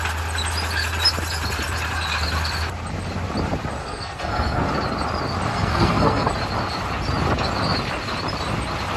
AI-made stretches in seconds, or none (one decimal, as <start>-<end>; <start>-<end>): 3.8-4.7; 5.5-6.3